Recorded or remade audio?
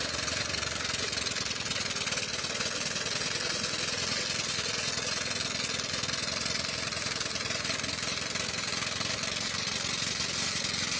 recorded